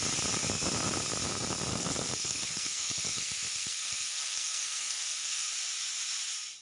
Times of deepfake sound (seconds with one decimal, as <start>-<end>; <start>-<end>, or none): 1.7-5.5